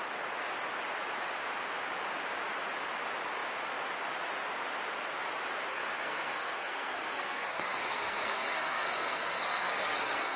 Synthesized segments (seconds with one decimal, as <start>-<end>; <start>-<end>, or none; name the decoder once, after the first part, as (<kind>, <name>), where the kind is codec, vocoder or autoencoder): 5.7-10.4 (codec, SNAC)